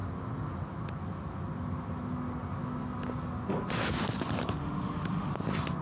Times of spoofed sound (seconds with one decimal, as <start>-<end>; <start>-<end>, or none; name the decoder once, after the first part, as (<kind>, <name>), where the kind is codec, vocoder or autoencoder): 4.6-5.3 (autoencoder, DAC-VAE)